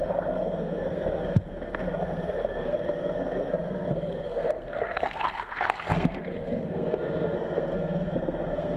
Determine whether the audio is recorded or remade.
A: remade